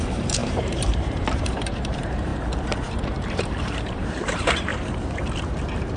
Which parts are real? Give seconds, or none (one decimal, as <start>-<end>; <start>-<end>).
2.3-3.3; 4.7-6.0